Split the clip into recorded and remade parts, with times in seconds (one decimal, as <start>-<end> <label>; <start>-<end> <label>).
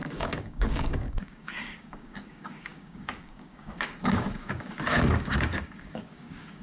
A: 0.0-6.6 remade